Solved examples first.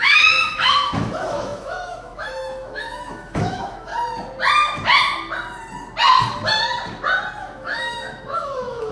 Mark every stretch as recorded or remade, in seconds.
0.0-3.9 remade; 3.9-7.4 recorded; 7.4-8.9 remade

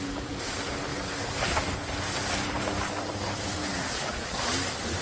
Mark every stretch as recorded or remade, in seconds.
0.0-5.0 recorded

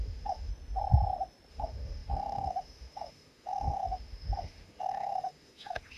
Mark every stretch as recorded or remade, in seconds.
0.0-0.5 remade; 0.5-1.5 recorded; 1.5-6.0 remade